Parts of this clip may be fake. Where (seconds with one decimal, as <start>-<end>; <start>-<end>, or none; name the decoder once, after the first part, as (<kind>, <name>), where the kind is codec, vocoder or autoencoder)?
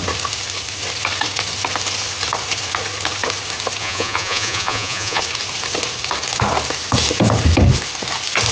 3.8-5.2 (vocoder, Vocos)